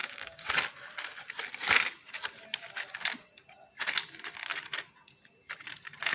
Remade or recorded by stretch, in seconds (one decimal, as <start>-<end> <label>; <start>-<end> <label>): 0.0-0.5 remade; 0.5-6.1 recorded